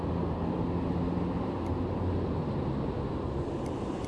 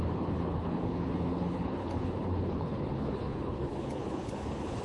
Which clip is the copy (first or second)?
second